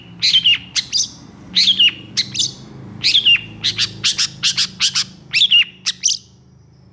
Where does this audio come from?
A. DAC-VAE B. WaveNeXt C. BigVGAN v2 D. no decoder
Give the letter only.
D